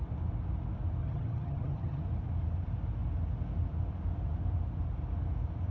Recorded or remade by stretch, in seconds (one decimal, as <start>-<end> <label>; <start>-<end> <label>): 0.0-1.0 recorded; 1.0-2.0 remade; 2.0-5.7 recorded